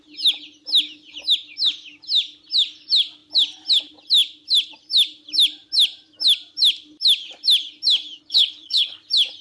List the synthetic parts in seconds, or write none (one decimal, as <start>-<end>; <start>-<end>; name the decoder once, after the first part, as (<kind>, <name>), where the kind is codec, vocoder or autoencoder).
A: 8.2-9.0 (codec, HILCodec)